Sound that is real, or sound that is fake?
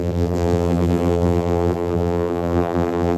fake